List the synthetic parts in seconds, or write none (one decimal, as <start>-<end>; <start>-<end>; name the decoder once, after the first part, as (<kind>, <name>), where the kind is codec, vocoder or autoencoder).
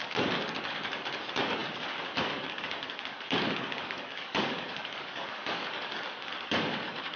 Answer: 0.0-7.2 (codec, DAC)